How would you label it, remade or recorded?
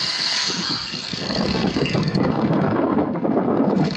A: remade